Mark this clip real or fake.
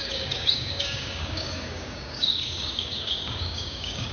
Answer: fake